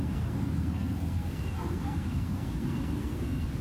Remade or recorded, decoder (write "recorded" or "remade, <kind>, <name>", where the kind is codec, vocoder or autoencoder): remade, codec, SNAC